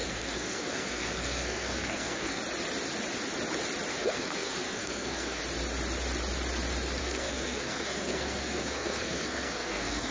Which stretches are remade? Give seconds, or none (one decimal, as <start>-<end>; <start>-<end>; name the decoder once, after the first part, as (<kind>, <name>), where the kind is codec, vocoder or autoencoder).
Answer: 0.0-2.4 (codec, SNAC); 3.9-5.4; 7.0-10.1